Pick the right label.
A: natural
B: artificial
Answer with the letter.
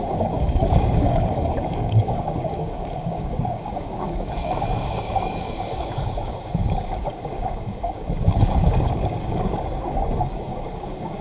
B